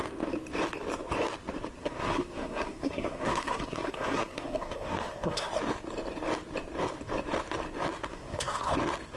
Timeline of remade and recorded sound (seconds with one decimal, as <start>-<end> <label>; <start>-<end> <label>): 0.0-1.8 recorded; 1.8-5.5 remade; 5.5-8.1 recorded; 8.1-8.7 remade; 8.7-9.2 recorded

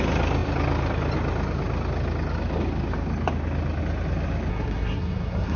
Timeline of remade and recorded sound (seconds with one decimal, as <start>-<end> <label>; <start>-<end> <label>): 0.0-4.5 recorded; 4.5-5.6 remade

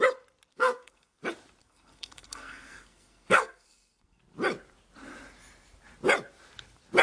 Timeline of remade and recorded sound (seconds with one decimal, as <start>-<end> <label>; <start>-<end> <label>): 0.0-0.5 recorded; 0.5-1.2 remade; 1.2-1.6 recorded; 1.6-4.2 remade; 4.2-7.0 recorded

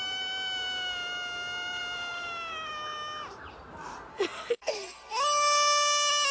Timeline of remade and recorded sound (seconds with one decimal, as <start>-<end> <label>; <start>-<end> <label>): 0.0-4.1 recorded; 4.1-4.7 remade; 4.7-6.3 recorded